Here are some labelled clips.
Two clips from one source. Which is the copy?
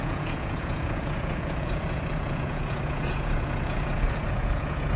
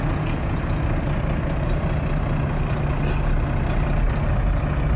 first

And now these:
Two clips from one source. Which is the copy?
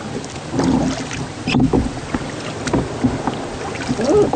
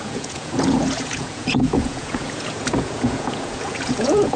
second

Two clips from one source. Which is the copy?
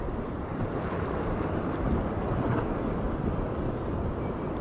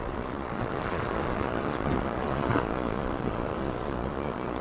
second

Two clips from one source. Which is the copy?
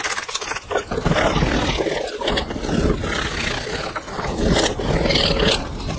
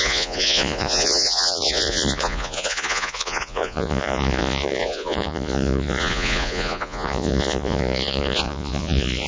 second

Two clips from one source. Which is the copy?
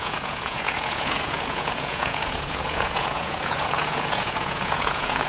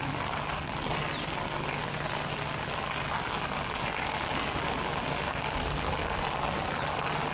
first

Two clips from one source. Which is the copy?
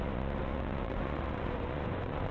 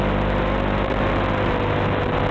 first